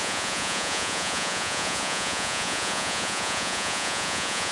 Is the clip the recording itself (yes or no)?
no